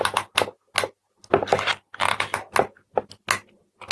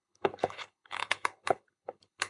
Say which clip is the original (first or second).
first